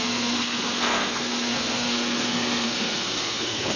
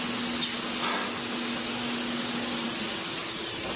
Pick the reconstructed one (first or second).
first